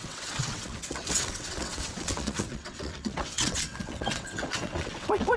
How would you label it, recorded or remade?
remade